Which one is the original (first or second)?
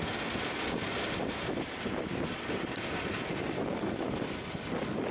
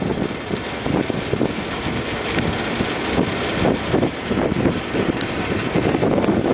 second